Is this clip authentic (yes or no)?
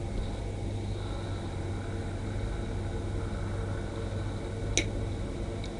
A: yes